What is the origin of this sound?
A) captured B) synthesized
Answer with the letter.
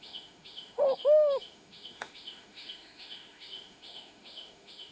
B